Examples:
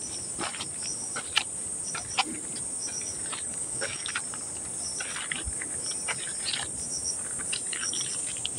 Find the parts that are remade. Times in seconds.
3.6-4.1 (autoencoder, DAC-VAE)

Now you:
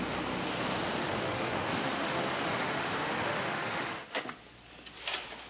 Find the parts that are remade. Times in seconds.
1.0-4.3 (autoencoder, DAC-VAE)

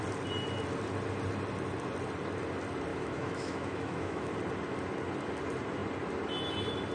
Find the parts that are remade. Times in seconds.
2.9-4.3 (autoencoder, DAC-VAE)

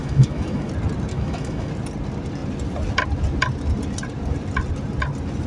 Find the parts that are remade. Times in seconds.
0.0-0.7 (autoencoder, DAC-VAE); 1.1-1.7

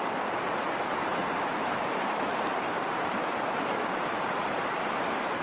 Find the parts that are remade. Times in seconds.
1.1-2.3 (autoencoder, DAC-VAE)

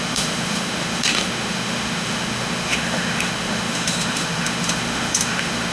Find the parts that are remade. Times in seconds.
0.0-5.7 (autoencoder, DAC-VAE)

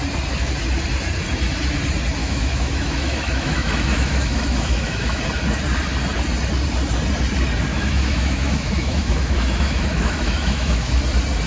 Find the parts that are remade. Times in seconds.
2.2-5.2 (autoencoder, DAC-VAE); 7.7-11.0